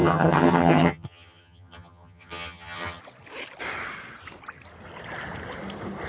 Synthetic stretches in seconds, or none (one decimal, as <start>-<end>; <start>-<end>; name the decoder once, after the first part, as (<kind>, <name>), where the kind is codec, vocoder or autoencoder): 0.0-3.0 (vocoder, HiFi-GAN)